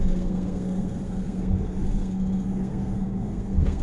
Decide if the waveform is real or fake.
fake